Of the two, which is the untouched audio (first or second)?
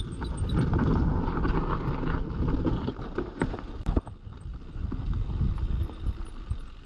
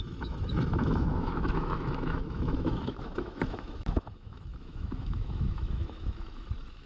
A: first